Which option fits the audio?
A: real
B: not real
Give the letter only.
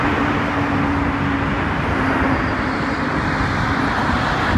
A